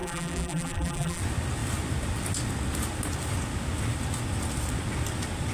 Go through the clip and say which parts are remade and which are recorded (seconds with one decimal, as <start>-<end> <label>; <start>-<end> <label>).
0.0-1.2 remade; 1.2-5.5 recorded